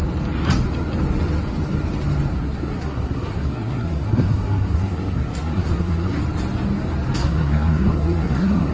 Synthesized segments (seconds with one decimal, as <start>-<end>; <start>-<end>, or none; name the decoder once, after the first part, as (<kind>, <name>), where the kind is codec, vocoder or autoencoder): 2.3-6.2 (codec, SNAC); 7.2-8.7